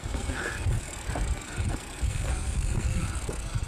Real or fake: fake